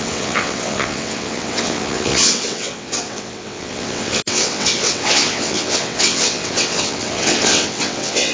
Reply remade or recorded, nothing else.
remade